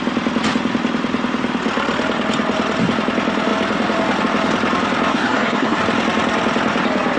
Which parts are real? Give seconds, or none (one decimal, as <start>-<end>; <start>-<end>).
0.0-5.1; 5.8-7.2